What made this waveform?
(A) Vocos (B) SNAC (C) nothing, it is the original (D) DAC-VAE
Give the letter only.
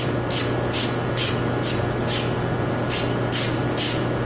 C